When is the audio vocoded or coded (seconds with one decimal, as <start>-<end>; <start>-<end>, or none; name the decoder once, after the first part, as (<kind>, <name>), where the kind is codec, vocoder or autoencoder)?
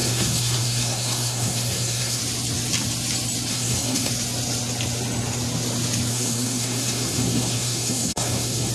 0.0-2.2 (codec, SNAC); 3.5-4.1; 6.1-8.7